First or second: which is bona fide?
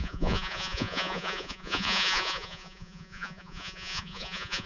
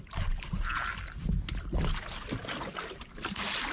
second